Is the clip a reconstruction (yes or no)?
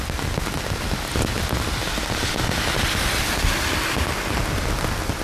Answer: no